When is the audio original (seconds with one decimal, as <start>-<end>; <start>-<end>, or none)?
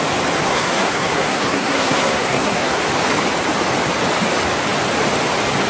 0.0-0.4; 2.8-5.7